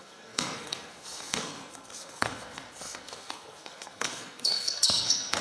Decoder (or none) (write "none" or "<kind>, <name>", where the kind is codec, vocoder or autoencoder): codec, SNAC